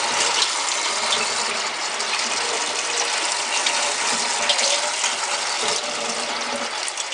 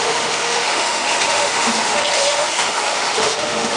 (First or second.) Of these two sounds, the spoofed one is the second